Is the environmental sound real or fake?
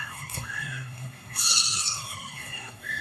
fake